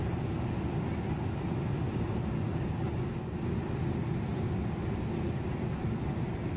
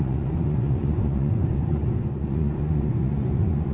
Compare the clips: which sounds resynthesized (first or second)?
second